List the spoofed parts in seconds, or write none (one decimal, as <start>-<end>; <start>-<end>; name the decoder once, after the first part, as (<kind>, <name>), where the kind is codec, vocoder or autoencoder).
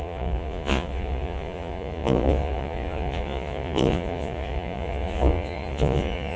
0.0-6.4 (vocoder, Vocos)